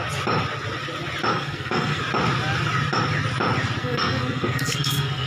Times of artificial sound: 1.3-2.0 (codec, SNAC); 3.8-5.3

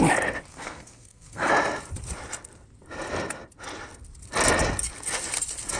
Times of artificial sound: 0.5-1.5 (codec, SNAC)

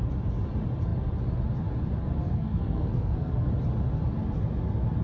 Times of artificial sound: 2.2-3.5 (codec, SNAC)

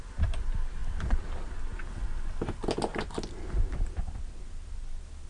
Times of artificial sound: none

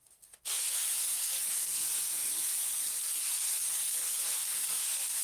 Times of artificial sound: 0.0-5.2 (codec, SNAC)

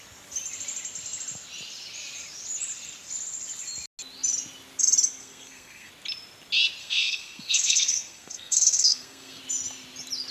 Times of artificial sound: 5.2-5.9 (codec, SNAC); 6.8-9.4

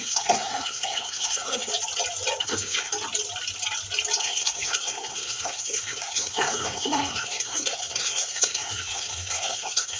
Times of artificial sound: 0.0-1.7 (codec, SNAC); 2.4-2.9; 4.2-10.0